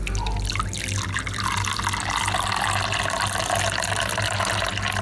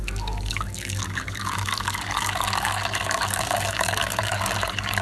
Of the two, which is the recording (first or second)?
first